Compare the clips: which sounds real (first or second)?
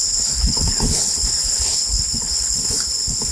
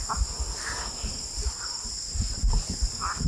second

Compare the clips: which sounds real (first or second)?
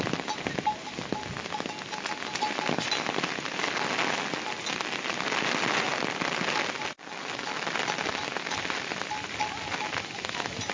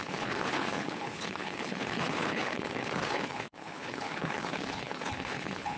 first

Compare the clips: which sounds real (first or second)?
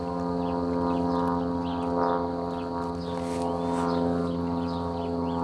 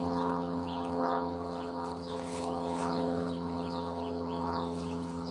first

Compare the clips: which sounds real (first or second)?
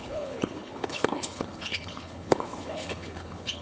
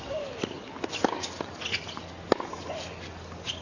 second